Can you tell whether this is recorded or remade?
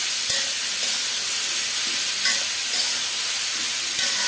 recorded